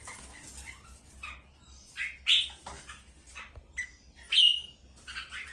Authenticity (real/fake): real